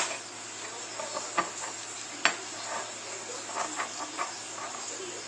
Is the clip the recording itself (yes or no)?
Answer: yes